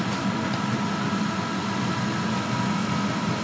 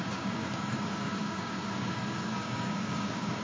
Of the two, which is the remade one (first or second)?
second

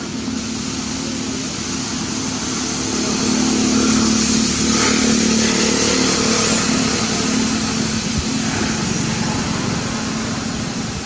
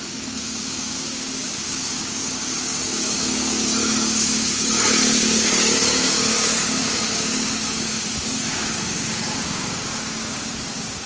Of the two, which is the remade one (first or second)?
second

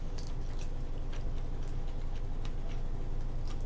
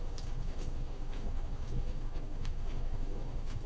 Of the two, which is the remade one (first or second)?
second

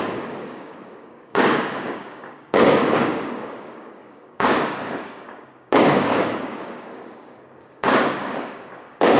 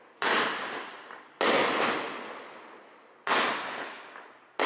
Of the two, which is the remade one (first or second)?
first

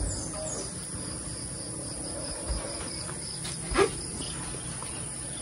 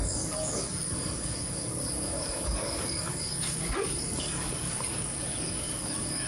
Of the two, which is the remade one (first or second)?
second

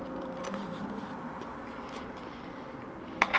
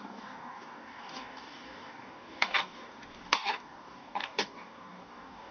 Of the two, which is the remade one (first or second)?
second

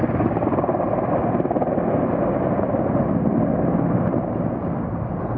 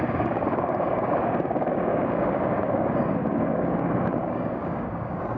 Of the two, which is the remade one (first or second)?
second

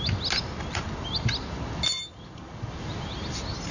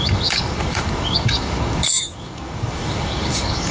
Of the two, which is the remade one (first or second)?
second